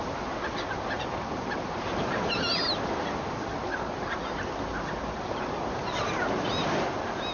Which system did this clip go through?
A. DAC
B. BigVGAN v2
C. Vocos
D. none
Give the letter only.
D